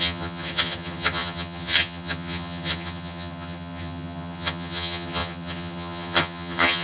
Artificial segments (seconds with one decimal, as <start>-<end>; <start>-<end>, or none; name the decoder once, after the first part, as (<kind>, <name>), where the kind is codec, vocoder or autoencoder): 0.0-6.8 (vocoder, HiFi-GAN)